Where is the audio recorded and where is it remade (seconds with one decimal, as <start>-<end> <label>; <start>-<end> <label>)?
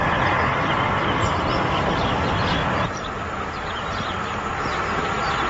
0.0-2.6 recorded; 2.6-3.6 remade; 3.6-5.5 recorded